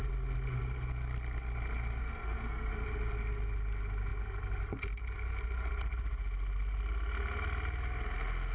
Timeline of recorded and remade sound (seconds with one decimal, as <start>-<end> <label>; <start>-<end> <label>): 0.0-2.0 recorded; 2.0-2.7 remade; 2.7-8.5 recorded